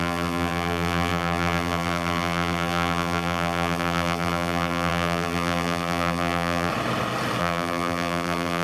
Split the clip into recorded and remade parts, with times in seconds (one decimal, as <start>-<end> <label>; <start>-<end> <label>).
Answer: 0.0-6.7 remade; 6.7-7.4 recorded; 7.4-8.6 remade